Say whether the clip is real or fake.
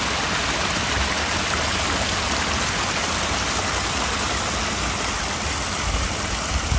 real